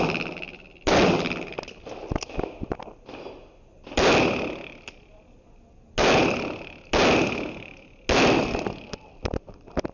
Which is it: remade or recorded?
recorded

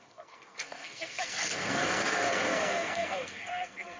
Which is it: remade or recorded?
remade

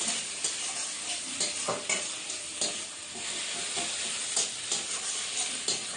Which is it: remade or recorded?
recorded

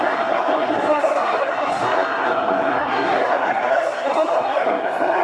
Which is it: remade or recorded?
remade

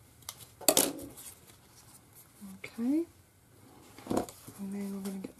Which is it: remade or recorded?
recorded